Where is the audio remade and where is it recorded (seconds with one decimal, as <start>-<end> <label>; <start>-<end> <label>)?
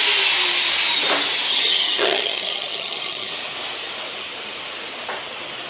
0.0-1.5 recorded; 1.5-3.3 remade; 3.3-5.7 recorded